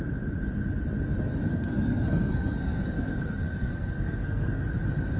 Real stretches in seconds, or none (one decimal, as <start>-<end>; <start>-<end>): 0.0-1.5; 4.6-5.2